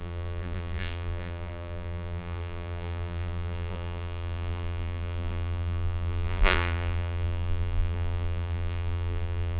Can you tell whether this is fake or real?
fake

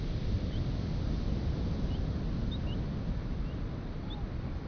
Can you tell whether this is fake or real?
real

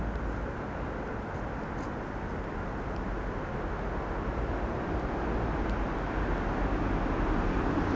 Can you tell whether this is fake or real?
real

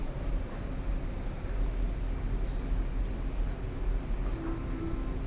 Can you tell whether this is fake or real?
real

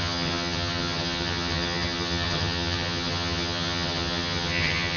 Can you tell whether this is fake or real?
fake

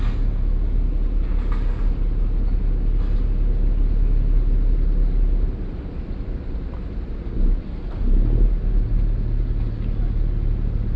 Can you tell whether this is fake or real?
real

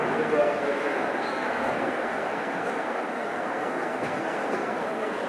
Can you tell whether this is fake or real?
fake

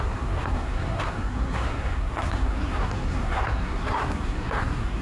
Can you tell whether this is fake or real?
fake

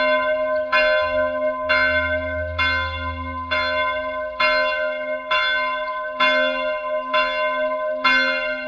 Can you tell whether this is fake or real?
real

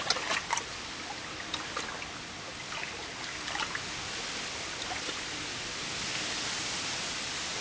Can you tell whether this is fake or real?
real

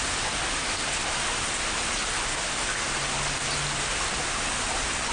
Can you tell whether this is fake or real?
real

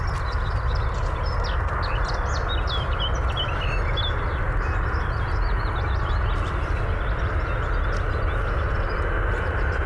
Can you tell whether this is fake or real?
real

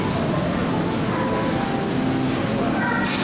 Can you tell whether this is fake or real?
real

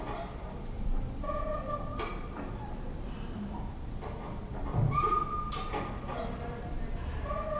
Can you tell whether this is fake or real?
fake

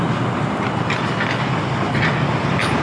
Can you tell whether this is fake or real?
real